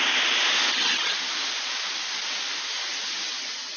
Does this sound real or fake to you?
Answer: real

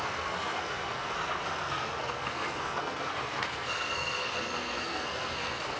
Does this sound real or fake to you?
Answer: fake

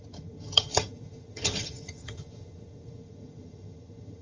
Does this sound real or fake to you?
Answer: fake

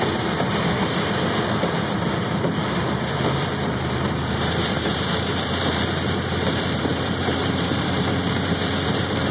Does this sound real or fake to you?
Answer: fake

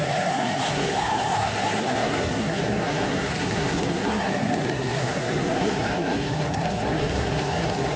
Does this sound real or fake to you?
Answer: fake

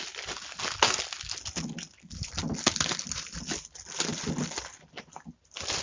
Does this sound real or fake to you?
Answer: real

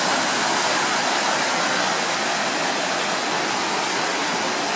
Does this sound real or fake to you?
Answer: real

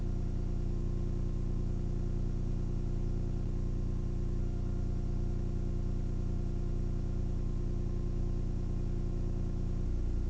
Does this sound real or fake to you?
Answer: real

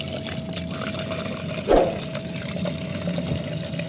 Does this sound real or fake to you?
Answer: real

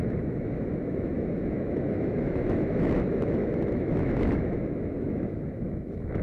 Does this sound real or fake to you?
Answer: fake